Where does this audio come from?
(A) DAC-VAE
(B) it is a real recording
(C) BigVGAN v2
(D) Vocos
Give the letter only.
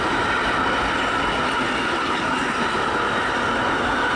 B